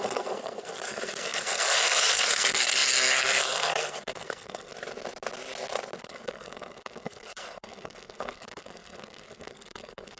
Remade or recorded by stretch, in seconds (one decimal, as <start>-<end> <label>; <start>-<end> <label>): 0.0-4.7 remade; 4.7-6.0 recorded; 6.0-10.2 remade